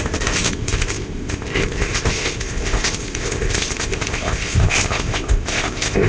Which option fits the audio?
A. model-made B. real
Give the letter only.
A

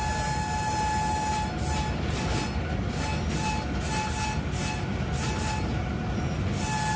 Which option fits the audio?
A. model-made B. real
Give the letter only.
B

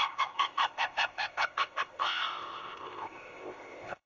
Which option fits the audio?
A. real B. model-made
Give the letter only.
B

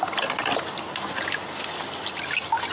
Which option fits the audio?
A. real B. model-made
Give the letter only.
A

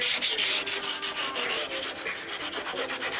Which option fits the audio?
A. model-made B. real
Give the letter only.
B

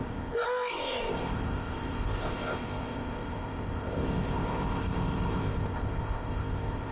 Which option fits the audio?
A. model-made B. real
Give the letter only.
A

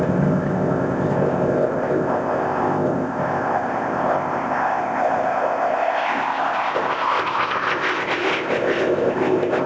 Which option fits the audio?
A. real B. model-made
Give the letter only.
B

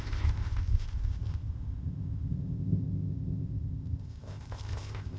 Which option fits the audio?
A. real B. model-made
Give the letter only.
B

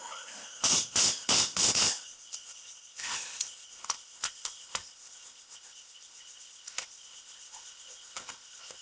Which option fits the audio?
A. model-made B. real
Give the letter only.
A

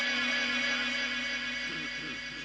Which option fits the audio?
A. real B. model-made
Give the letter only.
A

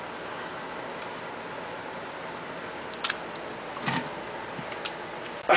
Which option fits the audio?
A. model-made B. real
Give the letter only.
B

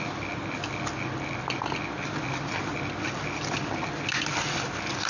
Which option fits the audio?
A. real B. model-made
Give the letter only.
A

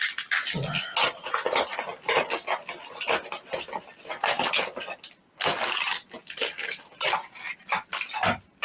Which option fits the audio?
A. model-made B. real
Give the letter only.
B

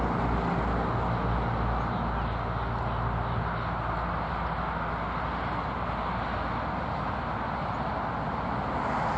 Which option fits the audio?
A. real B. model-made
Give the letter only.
A